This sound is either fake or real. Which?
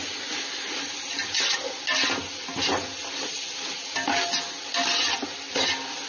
real